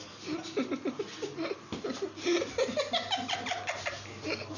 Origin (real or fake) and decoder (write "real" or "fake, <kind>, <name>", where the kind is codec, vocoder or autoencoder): real